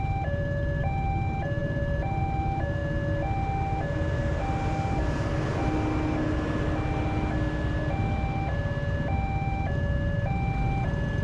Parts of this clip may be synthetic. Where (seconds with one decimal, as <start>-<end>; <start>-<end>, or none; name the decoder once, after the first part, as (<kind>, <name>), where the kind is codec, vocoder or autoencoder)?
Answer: none